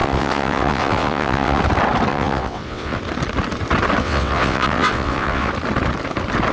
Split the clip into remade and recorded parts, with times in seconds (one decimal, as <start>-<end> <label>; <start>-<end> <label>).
0.0-1.6 remade; 1.6-2.1 recorded; 2.1-3.0 remade; 3.0-4.0 recorded; 4.0-5.5 remade; 5.5-6.5 recorded